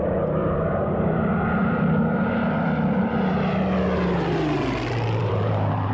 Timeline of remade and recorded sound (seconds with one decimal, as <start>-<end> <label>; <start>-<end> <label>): 0.0-0.4 recorded; 0.4-3.3 remade; 3.3-5.2 recorded; 5.2-5.9 remade